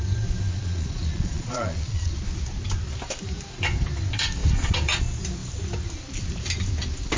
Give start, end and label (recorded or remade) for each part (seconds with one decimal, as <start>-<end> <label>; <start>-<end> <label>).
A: 0.0-0.5 recorded; 0.5-2.2 remade; 2.2-7.2 recorded